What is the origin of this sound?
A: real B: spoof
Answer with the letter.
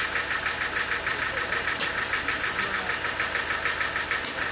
A